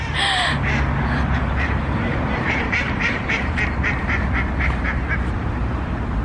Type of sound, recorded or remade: remade